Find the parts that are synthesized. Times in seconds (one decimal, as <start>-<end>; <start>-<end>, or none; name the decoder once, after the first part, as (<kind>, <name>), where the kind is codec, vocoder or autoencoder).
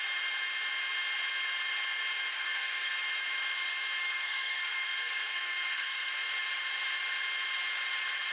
2.3-2.9 (codec, SNAC); 4.0-6.1